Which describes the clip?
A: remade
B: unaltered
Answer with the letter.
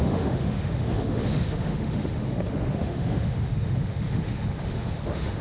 A